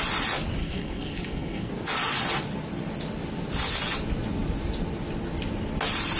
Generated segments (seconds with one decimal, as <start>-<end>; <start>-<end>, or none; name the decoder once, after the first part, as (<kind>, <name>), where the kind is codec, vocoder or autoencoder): 0.6-1.7 (codec, SNAC)

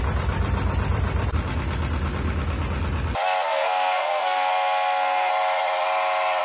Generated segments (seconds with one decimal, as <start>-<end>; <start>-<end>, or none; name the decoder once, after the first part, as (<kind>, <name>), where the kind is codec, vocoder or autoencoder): 3.5-5.3 (codec, SNAC)

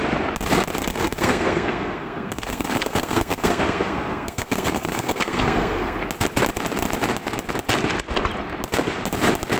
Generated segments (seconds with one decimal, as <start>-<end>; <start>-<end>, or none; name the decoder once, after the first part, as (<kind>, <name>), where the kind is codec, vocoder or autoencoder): 0.9-6.0 (codec, SNAC)

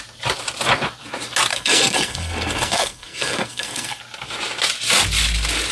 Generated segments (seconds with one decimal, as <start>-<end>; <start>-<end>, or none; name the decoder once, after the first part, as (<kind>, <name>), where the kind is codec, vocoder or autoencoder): 1.5-4.0 (codec, SNAC)

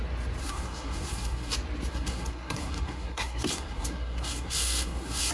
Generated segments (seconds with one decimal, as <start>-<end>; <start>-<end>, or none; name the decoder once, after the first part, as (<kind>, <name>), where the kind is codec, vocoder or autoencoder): 0.4-1.5 (codec, SNAC); 1.9-5.3

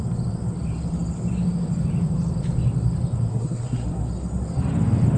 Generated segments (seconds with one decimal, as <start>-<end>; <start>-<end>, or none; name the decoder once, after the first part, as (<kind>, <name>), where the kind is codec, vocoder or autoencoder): 3.3-4.1 (codec, SNAC)

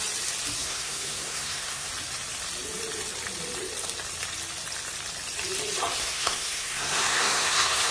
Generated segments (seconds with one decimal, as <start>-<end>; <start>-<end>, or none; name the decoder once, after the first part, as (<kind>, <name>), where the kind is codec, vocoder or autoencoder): 0.6-1.9 (codec, SNAC); 6.0-7.9

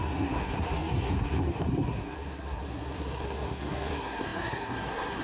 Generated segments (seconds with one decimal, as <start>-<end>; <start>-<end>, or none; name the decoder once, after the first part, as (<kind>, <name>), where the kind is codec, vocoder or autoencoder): 0.0-5.2 (codec, SNAC)